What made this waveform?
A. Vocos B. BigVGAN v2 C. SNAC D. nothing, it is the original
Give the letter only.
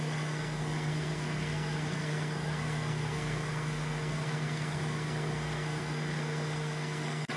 C